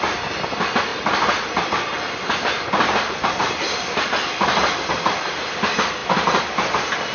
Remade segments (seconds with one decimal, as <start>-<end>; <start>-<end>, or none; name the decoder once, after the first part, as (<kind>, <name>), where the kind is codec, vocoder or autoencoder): none